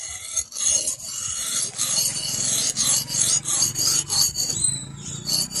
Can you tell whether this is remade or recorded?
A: recorded